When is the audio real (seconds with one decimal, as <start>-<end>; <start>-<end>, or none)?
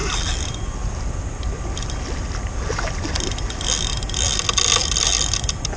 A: 3.1-4.8